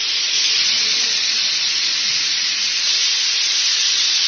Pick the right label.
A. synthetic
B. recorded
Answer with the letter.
A